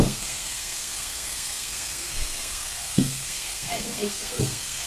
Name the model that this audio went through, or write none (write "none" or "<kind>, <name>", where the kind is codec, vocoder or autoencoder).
codec, SNAC